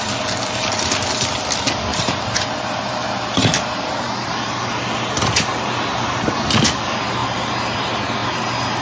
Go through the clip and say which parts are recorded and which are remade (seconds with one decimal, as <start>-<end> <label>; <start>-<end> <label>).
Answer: 0.0-1.9 recorded; 1.9-6.8 remade; 6.8-7.2 recorded; 7.2-7.8 remade; 7.8-8.8 recorded